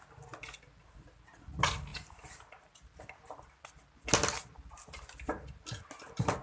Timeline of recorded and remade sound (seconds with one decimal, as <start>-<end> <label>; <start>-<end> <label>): 0.0-6.4 recorded